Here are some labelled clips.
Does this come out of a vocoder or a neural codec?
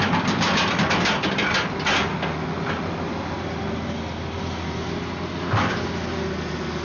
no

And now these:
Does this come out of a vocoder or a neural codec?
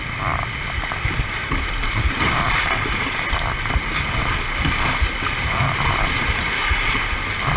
no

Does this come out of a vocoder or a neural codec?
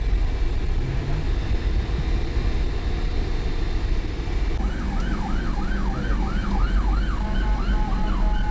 no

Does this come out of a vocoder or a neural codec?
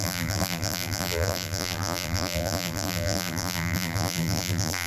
yes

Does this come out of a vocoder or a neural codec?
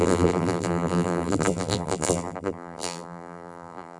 yes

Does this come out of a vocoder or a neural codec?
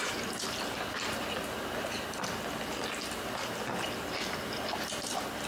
no